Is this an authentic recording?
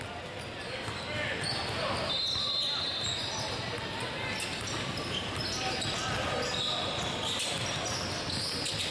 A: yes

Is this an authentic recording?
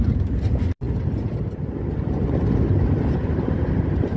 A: no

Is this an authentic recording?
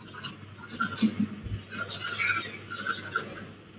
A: yes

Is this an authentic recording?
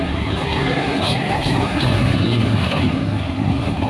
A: no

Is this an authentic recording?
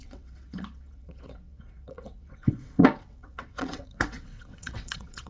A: no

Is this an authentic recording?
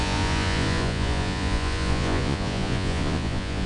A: no